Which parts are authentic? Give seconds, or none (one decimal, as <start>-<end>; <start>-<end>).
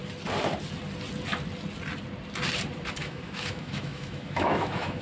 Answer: 0.0-3.0